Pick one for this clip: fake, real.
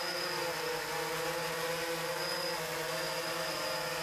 real